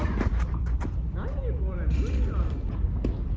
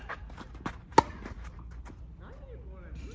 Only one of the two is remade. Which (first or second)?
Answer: first